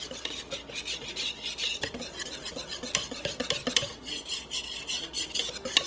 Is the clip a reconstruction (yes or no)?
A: no